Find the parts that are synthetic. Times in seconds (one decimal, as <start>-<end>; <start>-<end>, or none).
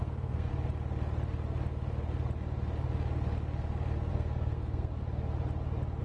0.0-0.5; 4.1-4.9